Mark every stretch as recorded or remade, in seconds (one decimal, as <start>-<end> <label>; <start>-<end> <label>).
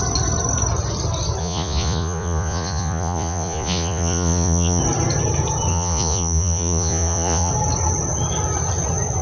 0.0-1.4 recorded; 1.4-4.8 remade; 4.8-5.7 recorded; 5.7-7.5 remade; 7.5-9.2 recorded